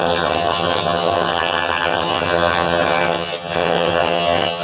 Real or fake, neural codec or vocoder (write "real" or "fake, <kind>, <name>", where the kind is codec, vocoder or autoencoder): fake, vocoder, HiFi-GAN